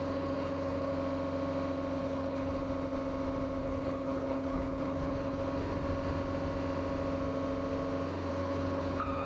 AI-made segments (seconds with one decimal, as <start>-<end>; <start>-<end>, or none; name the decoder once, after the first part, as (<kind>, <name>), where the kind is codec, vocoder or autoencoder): 0.0-0.9 (codec, HILCodec); 2.0-2.6; 3.6-5.4; 8.3-9.2